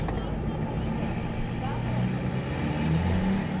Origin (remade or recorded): recorded